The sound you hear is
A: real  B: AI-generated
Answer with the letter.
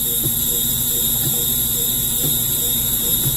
B